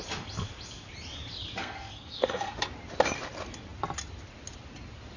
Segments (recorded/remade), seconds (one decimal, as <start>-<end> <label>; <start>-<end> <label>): 0.0-1.6 recorded; 1.6-2.5 remade; 2.5-5.2 recorded